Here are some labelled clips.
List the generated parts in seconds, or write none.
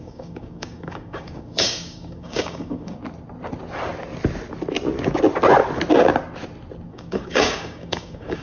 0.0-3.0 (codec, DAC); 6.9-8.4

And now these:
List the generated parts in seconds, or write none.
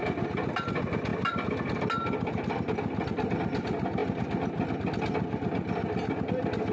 none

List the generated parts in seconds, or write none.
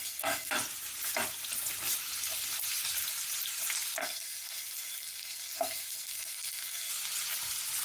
0.0-0.5 (codec, SNAC); 4.0-6.9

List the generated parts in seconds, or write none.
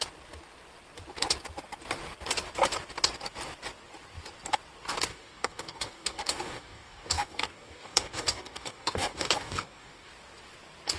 5.1-10.1 (codec, DAC)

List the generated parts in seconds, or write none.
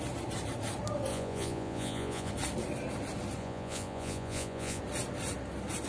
1.1-2.3 (vocoder, Vocos); 3.4-4.8